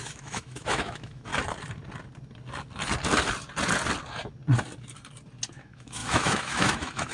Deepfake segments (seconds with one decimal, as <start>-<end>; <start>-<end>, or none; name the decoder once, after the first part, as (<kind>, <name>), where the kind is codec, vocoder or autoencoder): 0.0-1.3 (autoencoder, DAC-VAE); 5.5-7.1